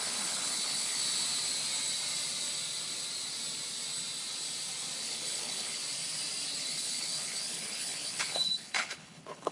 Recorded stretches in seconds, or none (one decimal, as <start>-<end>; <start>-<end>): 1.0-5.0; 5.8-6.6